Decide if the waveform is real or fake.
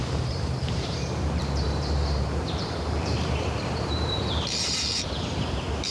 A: fake